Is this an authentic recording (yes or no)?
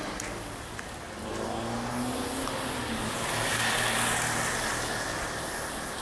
yes